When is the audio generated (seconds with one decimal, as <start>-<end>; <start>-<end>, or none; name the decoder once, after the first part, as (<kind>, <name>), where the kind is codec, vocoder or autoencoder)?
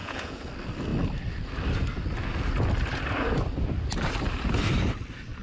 0.0-0.5 (vocoder, Vocos)